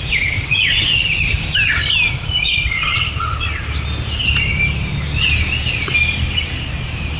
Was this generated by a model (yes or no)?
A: no